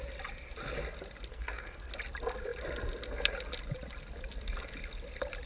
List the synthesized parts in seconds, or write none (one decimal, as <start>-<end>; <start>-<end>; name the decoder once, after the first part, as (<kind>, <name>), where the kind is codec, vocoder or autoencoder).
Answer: 1.3-1.9 (codec, SNAC)